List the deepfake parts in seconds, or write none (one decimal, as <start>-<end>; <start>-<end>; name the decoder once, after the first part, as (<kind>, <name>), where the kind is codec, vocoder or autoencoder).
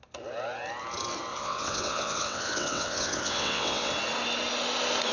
1.3-3.9 (vocoder, WaveNeXt)